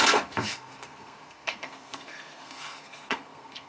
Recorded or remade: remade